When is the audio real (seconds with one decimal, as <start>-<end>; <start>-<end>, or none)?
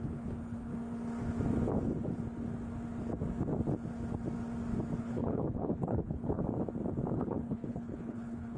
0.7-5.0; 6.4-7.1